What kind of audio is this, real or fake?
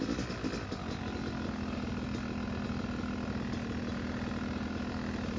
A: real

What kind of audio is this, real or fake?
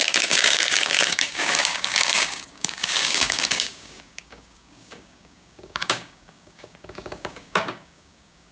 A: fake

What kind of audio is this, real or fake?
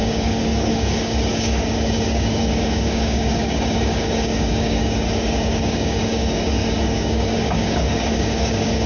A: fake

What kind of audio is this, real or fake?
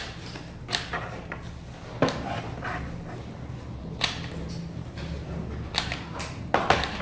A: real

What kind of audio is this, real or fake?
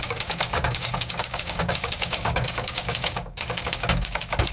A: fake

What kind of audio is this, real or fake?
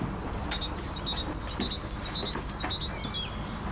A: real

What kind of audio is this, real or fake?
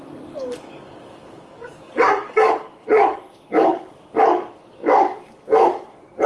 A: fake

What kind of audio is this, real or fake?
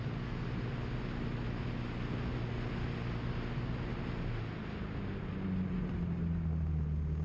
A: real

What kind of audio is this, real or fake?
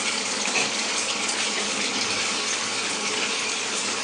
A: fake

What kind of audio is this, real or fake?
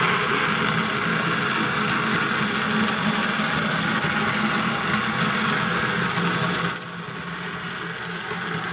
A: real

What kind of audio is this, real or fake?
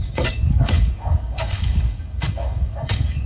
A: fake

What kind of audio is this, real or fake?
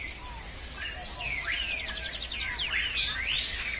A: real